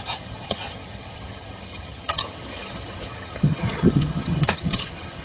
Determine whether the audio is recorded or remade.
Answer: remade